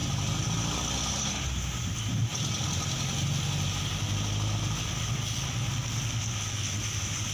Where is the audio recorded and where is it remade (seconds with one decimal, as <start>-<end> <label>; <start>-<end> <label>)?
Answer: 0.0-7.3 recorded